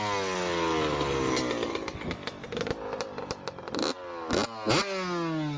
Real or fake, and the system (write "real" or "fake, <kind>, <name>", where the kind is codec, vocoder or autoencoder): real